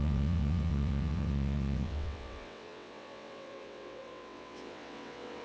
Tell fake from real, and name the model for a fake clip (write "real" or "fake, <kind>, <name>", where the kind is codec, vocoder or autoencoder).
fake, vocoder, WaveNeXt